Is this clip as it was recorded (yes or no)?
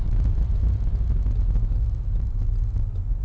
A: yes